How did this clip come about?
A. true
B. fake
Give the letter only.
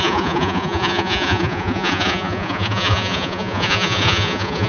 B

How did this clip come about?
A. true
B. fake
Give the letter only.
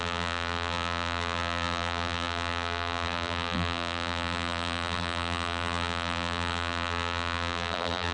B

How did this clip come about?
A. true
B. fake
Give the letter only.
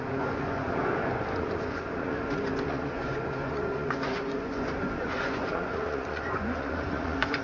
B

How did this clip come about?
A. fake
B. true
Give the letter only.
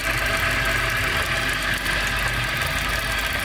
B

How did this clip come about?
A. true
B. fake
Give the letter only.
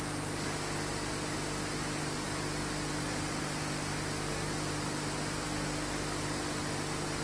A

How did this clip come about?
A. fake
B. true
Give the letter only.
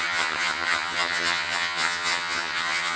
A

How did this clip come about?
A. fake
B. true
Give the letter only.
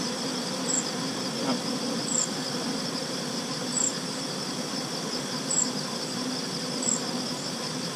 B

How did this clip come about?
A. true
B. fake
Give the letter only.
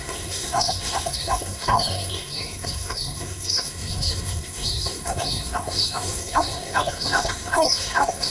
B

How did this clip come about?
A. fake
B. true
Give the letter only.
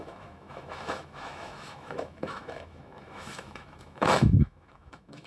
A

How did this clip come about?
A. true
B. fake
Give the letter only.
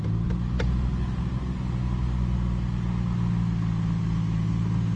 A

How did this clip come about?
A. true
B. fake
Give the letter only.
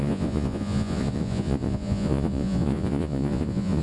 B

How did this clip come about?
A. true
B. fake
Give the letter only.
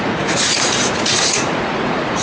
B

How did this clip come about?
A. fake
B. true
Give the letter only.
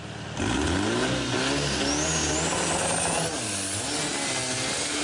B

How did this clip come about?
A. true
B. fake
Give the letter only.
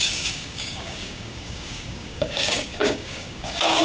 B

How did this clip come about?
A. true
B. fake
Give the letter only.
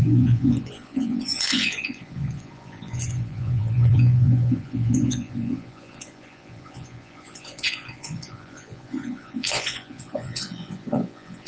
B